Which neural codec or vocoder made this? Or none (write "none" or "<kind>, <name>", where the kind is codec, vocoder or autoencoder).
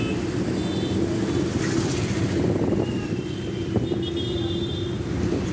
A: none